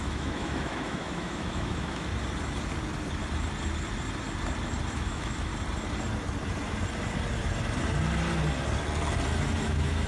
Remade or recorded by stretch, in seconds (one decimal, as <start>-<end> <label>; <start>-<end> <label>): 0.0-2.1 remade; 2.1-4.9 recorded; 4.9-5.5 remade; 5.5-9.6 recorded; 9.6-10.1 remade